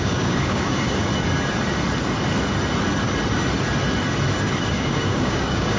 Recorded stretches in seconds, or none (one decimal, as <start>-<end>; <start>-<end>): 1.1-4.6